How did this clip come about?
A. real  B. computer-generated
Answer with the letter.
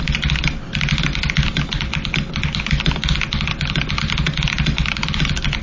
A